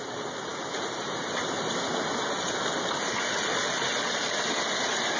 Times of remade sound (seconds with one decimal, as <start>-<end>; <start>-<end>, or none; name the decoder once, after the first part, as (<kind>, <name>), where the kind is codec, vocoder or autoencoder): none